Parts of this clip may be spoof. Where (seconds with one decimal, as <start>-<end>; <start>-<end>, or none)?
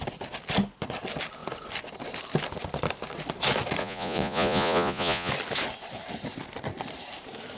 3.8-5.3